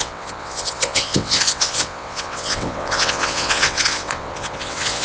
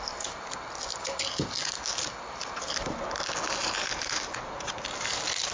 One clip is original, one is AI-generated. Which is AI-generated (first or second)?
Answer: first